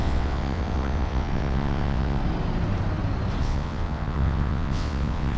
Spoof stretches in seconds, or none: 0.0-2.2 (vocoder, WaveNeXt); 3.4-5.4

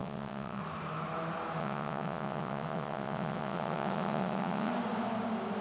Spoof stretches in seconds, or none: 0.0-0.6 (vocoder, WaveNeXt); 1.6-4.7

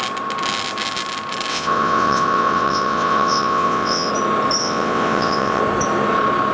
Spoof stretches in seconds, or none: 1.5-4.1 (vocoder, WaveNeXt); 4.6-5.6

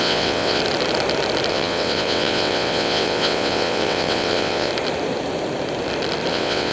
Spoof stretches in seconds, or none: 0.0-0.6 (vocoder, WaveNeXt); 1.5-4.7; 6.3-6.7